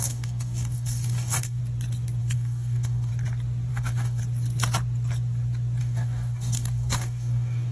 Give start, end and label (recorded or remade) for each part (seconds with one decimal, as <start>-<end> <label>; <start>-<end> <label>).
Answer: 0.0-1.6 remade; 1.6-2.2 recorded; 2.2-3.1 remade; 3.1-3.7 recorded; 3.7-4.2 remade; 4.2-5.8 recorded; 5.8-7.7 remade